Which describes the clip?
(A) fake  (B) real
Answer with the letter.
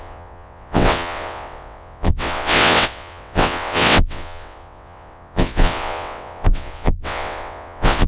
A